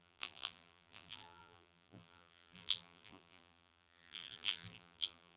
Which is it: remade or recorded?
remade